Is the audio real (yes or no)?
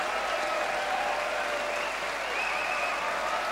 yes